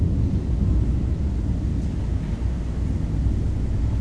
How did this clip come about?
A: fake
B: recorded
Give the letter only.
B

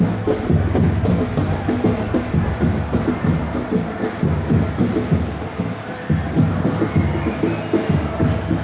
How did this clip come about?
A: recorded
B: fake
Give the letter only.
A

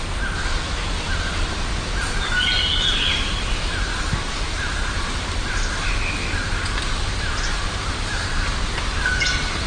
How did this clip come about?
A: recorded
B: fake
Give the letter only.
A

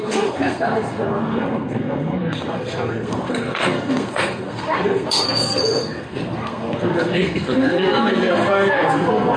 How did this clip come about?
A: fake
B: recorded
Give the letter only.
A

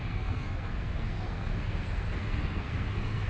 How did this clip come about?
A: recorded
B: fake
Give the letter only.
B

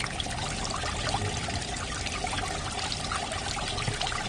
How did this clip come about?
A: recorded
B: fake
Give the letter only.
A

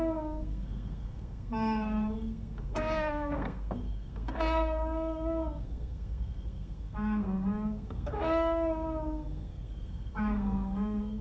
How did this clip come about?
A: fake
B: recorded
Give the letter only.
A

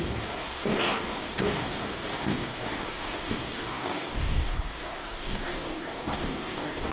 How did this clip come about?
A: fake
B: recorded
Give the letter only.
A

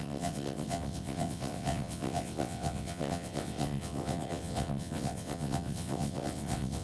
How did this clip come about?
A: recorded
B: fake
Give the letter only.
B